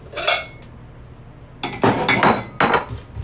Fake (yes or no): no